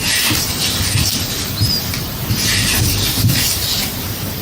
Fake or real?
fake